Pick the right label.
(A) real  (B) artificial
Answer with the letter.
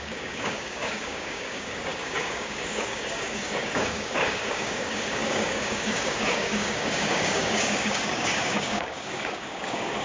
B